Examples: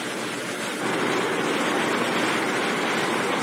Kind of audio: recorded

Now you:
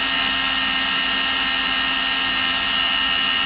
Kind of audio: recorded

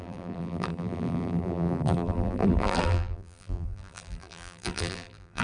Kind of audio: remade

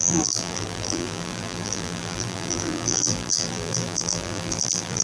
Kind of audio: remade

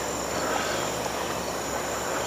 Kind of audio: remade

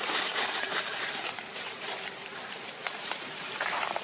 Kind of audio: remade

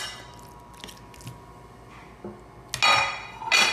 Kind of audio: recorded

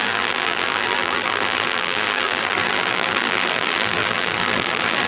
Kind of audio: remade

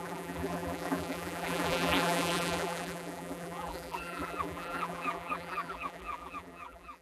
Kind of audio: remade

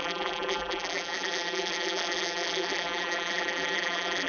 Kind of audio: remade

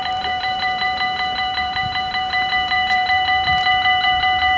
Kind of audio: remade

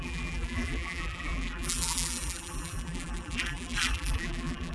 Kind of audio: remade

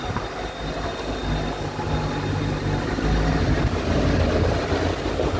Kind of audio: recorded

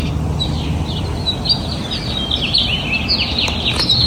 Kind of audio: recorded